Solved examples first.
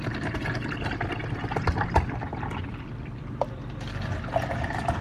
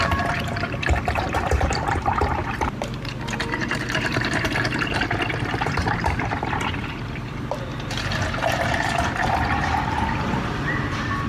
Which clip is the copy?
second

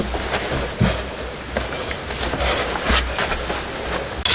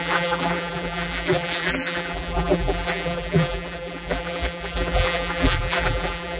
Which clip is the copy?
second